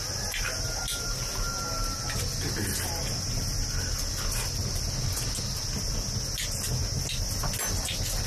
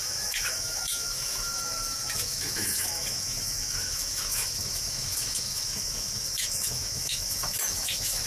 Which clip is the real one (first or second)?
first